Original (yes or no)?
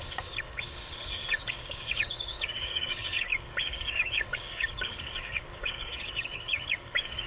no